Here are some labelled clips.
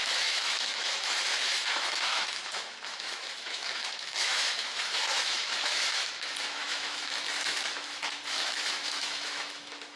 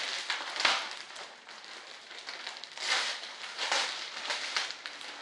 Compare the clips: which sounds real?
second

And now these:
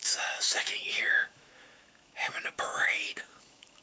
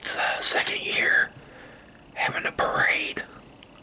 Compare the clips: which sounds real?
second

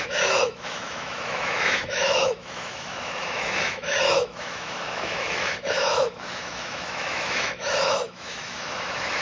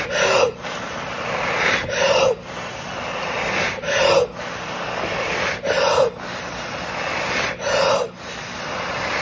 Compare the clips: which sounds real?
second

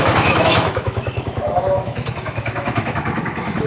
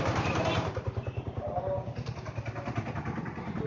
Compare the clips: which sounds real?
second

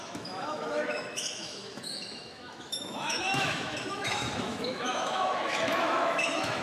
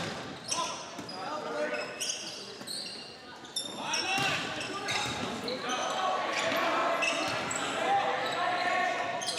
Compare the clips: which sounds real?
second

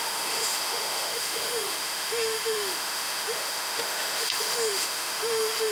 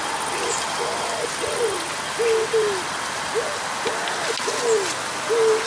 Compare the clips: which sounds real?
second